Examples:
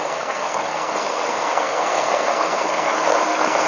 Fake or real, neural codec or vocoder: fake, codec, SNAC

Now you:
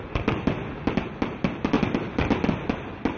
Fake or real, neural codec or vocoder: real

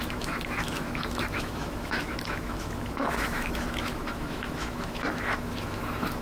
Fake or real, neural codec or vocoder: fake, autoencoder, DAC-VAE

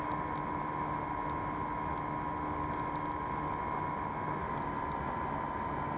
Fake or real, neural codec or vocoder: real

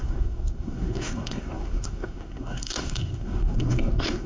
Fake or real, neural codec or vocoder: fake, codec, SNAC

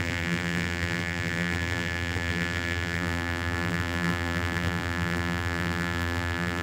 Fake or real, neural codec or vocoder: fake, vocoder, BigVGAN v2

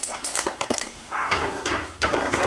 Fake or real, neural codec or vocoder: fake, codec, SNAC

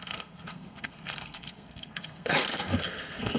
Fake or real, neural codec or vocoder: fake, codec, SNAC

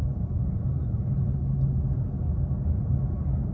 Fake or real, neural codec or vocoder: real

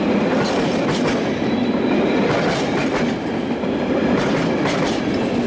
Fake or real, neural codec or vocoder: real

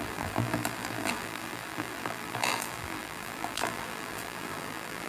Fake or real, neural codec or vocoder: fake, vocoder, BigVGAN v2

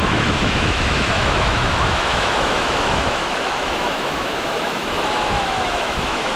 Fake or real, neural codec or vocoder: fake, autoencoder, DAC-VAE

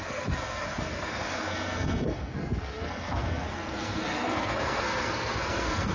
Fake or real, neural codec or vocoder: fake, codec, SNAC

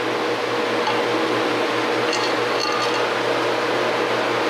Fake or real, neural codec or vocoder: real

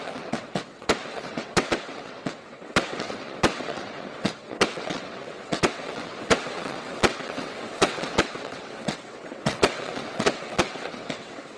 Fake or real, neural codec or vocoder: fake, vocoder, WaveNeXt